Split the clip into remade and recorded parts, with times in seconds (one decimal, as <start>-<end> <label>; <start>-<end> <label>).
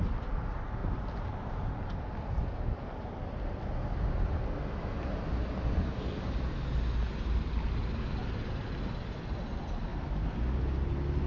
0.0-0.8 recorded; 0.8-1.5 remade; 1.5-11.3 recorded